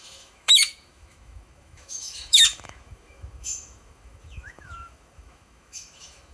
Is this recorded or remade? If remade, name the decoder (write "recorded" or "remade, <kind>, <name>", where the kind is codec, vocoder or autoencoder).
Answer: remade, autoencoder, DAC-VAE